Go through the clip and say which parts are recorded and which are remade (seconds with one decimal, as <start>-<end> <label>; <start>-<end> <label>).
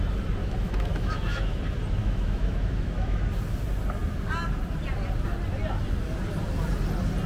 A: 0.0-0.4 recorded; 0.4-1.6 remade; 1.6-2.0 recorded; 2.0-3.2 remade; 3.2-7.3 recorded